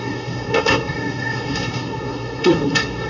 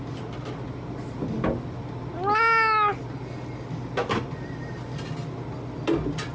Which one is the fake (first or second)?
first